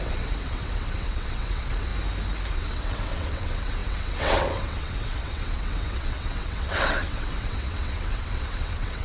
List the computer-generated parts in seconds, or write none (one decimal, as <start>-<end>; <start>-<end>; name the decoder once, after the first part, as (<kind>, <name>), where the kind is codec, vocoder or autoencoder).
0.0-1.9 (vocoder, WaveNeXt); 2.5-9.0